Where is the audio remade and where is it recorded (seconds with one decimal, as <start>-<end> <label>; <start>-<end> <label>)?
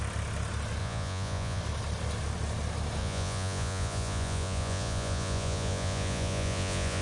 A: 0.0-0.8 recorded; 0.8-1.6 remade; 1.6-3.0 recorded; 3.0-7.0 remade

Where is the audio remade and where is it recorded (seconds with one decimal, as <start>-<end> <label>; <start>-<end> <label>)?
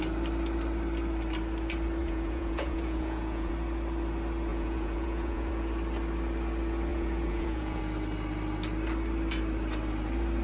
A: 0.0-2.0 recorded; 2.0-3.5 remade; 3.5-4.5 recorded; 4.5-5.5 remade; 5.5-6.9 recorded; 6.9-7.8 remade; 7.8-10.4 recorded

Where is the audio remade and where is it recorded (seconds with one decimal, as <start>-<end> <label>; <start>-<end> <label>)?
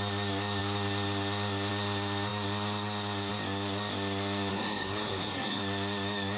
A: 0.0-4.5 recorded; 4.5-5.6 remade; 5.6-6.4 recorded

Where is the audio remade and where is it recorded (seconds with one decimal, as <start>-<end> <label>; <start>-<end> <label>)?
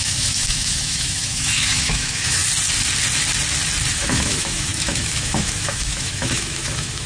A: 0.0-2.4 remade; 2.4-3.9 recorded; 3.9-7.1 remade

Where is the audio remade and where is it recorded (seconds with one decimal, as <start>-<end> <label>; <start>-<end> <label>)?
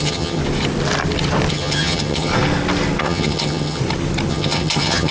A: 0.0-0.4 remade; 0.4-1.5 recorded; 1.5-2.3 remade; 2.3-3.0 recorded; 3.0-3.8 remade; 3.8-4.3 recorded; 4.3-5.1 remade